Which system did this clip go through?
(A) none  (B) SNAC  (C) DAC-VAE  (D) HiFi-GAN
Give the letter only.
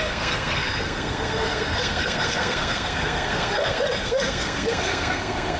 B